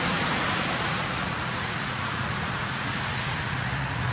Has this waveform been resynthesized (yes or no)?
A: yes